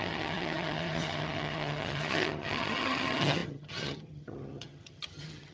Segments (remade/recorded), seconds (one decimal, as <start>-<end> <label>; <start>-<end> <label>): 0.0-5.5 remade